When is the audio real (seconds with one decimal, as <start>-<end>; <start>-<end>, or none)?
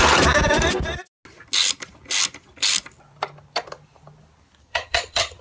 0.0-4.6